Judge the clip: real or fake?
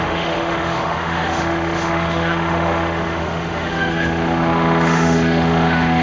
fake